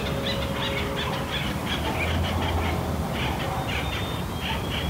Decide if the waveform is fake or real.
real